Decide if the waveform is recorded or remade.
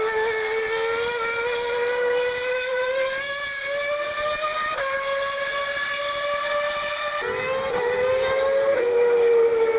recorded